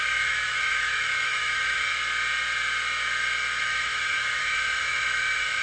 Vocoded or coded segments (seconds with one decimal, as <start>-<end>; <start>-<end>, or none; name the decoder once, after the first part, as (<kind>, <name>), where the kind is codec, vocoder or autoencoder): 0.0-1.9 (autoencoder, DAC-VAE); 3.6-5.6